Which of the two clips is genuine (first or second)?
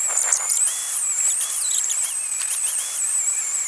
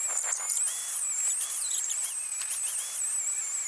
second